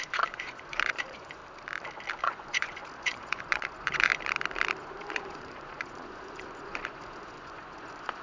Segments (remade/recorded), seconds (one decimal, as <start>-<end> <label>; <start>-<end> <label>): 0.0-1.4 remade; 1.4-2.2 recorded; 2.2-4.1 remade; 4.1-4.8 recorded; 4.8-8.2 remade